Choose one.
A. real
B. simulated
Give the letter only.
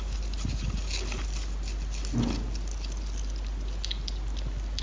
A